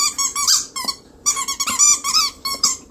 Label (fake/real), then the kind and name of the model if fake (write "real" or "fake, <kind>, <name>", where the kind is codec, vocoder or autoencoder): fake, vocoder, BigVGAN v2